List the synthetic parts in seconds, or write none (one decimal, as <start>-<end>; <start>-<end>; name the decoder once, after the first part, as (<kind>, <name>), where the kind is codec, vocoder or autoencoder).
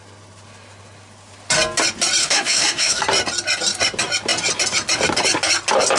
2.2-3.0 (autoencoder, DAC-VAE)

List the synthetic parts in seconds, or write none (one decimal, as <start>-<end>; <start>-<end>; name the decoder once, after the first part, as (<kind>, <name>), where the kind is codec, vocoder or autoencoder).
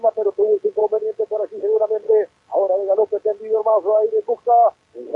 none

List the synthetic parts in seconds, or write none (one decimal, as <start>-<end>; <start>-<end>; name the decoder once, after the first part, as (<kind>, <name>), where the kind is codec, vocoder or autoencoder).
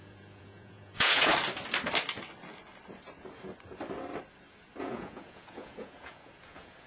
0.0-1.3 (vocoder, Vocos); 4.8-6.9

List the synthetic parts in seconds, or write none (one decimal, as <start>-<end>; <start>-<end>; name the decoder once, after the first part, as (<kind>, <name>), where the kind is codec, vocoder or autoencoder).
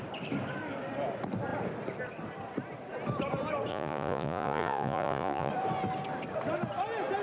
3.7-5.5 (vocoder, Vocos)